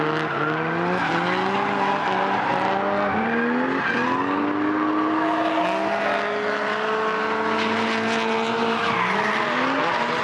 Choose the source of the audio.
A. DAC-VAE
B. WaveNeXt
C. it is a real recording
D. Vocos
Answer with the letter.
C